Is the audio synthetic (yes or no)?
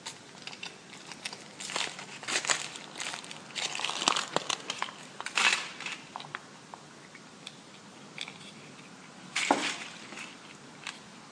no